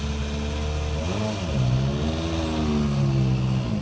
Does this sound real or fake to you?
real